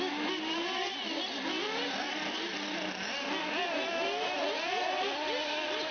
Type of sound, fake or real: real